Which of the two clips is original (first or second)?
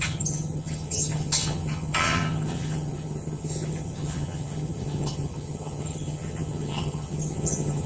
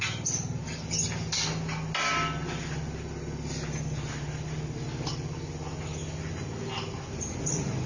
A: second